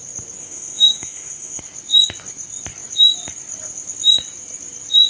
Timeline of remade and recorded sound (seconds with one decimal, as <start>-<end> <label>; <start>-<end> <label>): 0.0-0.4 recorded; 0.4-1.6 remade; 1.6-5.1 recorded